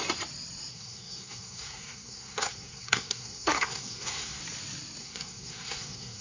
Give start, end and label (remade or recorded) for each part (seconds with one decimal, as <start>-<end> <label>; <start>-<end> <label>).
0.0-0.7 recorded; 0.7-4.4 remade; 4.4-5.0 recorded; 5.0-6.2 remade